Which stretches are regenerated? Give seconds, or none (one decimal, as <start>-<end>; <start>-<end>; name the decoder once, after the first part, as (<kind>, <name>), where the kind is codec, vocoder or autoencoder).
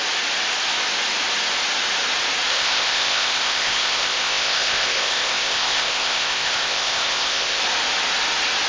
2.5-7.6 (codec, ZipCodec)